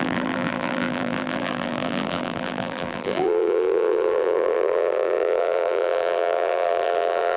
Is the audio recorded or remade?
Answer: remade